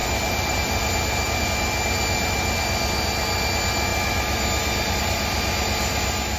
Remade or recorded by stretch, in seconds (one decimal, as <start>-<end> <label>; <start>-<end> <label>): 0.0-1.4 remade; 1.4-6.4 recorded